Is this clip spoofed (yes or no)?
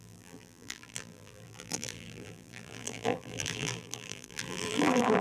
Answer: yes